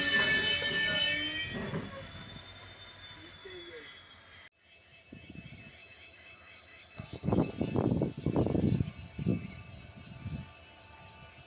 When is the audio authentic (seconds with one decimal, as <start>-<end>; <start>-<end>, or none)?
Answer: 0.0-3.4; 4.2-5.8; 7.5-11.5